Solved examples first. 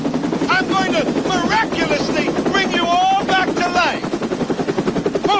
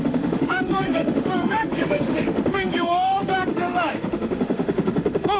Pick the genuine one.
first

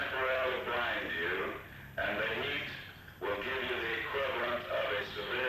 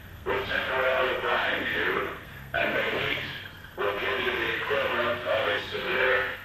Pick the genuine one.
first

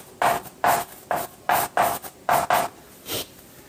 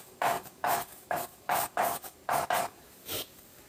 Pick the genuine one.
first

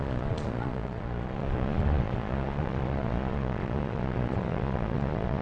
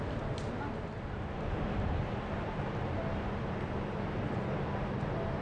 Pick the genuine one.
second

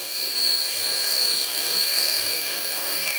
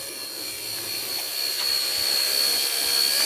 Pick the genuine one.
second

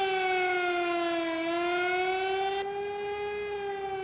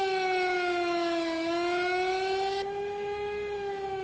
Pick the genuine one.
first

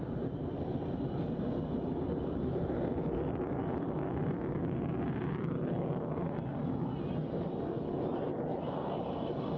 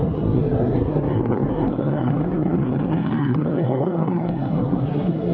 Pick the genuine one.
first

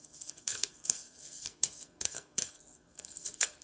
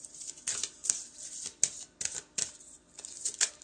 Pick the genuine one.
second